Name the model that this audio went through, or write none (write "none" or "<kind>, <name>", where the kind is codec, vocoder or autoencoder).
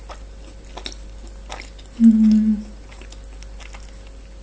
none